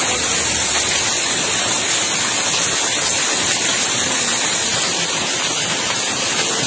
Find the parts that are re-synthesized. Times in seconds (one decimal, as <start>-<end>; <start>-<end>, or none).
none